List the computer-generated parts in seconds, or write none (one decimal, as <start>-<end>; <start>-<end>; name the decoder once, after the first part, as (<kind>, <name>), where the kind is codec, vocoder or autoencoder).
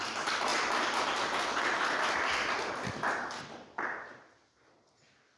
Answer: none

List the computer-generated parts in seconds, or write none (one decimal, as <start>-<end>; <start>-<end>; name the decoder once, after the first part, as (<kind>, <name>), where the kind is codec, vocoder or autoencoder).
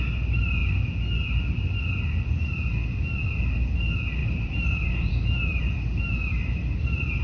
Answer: 4.2-5.6 (vocoder, BigVGAN v2); 6.2-7.2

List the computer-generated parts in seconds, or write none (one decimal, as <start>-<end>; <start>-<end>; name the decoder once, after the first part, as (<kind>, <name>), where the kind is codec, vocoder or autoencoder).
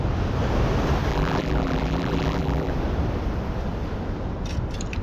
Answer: 1.1-2.7 (vocoder, BigVGAN v2)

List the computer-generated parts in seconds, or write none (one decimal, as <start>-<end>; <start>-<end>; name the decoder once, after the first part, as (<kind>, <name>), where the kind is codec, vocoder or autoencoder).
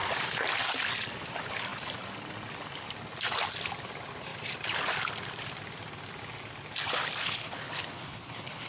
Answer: 7.2-8.7 (codec, HILCodec)